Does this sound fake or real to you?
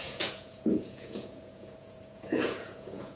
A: fake